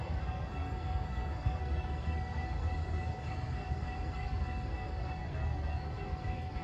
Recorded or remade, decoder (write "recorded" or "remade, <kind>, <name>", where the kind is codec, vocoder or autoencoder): remade, codec, SNAC